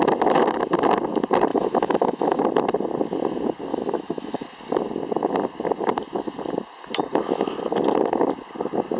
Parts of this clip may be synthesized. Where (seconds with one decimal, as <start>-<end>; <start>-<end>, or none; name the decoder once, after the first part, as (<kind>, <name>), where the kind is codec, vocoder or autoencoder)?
1.5-2.4 (autoencoder, DAC-VAE); 3.7-4.4